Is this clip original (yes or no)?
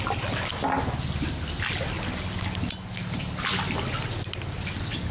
yes